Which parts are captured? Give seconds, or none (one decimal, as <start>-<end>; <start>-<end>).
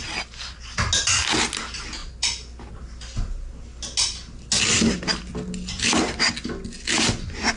0.0-7.6